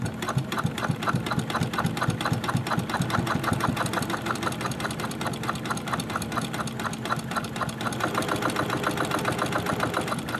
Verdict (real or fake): real